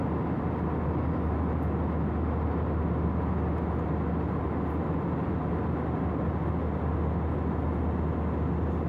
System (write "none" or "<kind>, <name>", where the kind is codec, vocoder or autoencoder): none